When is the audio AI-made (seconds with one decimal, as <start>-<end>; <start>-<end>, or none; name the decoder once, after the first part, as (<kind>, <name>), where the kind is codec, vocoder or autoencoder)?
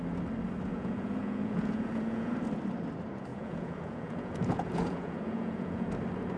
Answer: 0.7-2.3 (vocoder, Vocos); 3.3-5.9